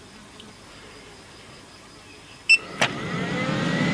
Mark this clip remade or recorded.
recorded